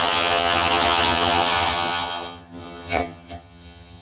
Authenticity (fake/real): fake